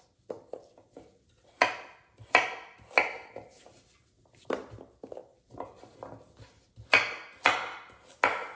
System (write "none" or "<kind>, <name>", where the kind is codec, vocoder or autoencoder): none